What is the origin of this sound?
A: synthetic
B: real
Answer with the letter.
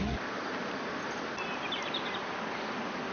B